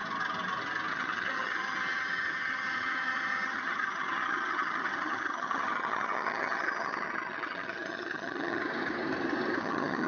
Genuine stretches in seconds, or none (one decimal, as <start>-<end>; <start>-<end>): 0.0-0.9; 8.6-9.6